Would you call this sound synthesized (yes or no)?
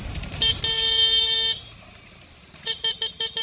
no